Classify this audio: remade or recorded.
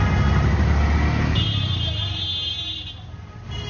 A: recorded